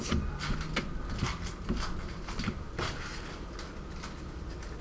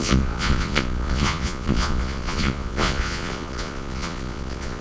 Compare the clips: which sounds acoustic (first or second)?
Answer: first